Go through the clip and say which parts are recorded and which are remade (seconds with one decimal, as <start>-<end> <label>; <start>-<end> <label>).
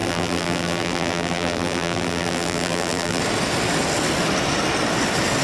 0.0-3.2 remade; 3.2-5.4 recorded